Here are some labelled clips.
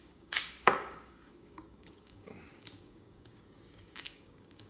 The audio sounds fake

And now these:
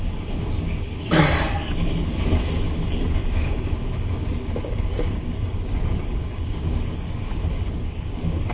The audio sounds fake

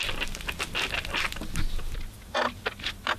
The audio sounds real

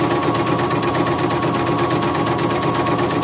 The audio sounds real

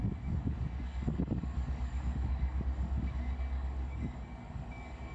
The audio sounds fake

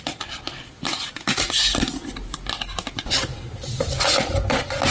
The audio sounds real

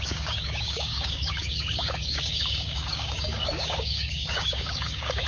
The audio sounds fake